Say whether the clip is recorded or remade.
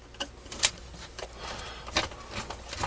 recorded